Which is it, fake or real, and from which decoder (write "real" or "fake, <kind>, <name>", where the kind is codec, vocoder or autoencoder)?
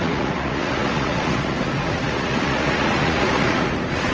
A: fake, vocoder, Vocos